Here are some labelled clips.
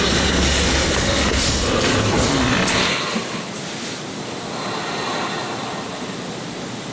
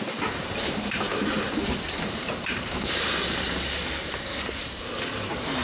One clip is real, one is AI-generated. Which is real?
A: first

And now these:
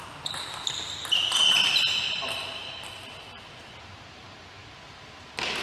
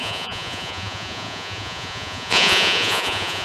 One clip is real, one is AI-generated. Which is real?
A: first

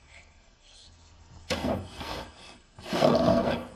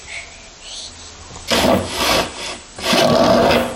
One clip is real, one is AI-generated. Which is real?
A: second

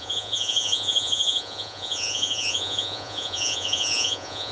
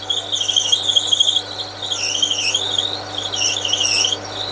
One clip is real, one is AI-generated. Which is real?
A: second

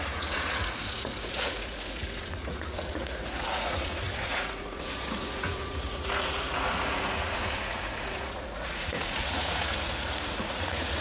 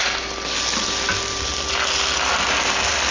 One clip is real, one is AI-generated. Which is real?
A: second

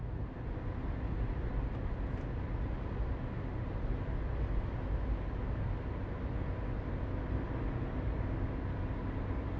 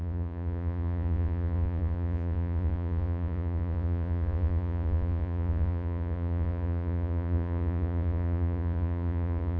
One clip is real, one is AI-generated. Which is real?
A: first